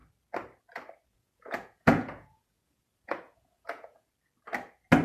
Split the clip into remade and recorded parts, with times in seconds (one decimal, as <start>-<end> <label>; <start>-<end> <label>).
0.0-1.1 recorded; 1.1-4.1 remade; 4.1-5.0 recorded